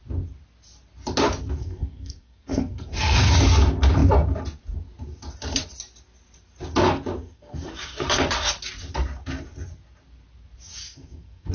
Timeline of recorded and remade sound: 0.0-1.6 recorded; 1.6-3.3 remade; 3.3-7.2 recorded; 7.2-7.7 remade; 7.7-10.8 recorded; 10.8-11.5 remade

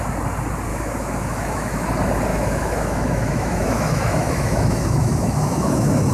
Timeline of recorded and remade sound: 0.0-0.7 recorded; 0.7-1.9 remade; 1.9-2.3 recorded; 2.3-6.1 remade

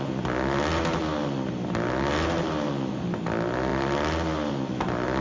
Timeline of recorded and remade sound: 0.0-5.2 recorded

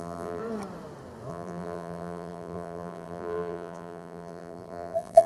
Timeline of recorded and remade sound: 0.0-0.4 remade; 0.4-1.3 recorded; 1.3-5.3 remade

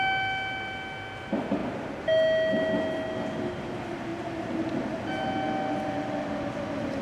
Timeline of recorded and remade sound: 0.0-7.0 recorded

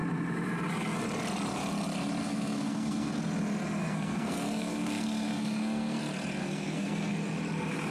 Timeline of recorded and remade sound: 0.0-2.2 recorded; 2.2-3.2 remade; 3.2-3.8 recorded; 3.8-6.0 remade; 6.0-6.4 recorded; 6.4-7.1 remade; 7.1-7.9 recorded

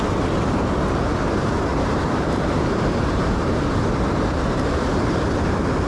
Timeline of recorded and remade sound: 0.0-1.7 recorded; 1.7-5.2 remade; 5.2-5.9 recorded

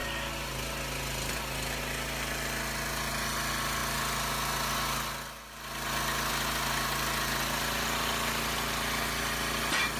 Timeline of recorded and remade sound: 0.0-10.0 recorded